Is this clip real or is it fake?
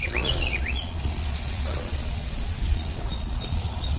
fake